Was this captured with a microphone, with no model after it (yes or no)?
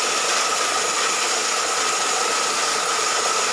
yes